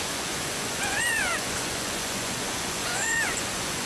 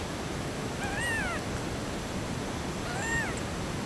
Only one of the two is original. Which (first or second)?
second